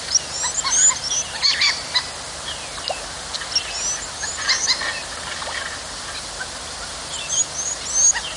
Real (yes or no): yes